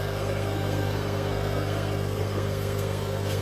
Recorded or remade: remade